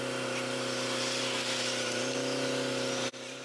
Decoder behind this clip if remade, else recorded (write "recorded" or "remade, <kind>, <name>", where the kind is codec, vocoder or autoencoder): recorded